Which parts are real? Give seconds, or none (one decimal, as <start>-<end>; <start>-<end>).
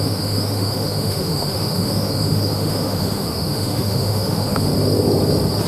4.7-5.7